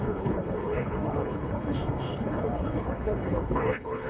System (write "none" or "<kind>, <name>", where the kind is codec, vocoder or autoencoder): codec, HILCodec